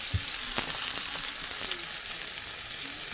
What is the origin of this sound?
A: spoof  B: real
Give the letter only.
B